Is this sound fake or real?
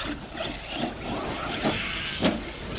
real